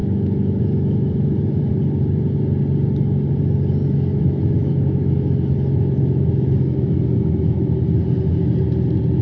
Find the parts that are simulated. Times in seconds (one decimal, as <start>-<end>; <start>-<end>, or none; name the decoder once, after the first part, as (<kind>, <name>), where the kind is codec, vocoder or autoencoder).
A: 0.0-1.7 (autoencoder, DAC-VAE); 3.8-7.8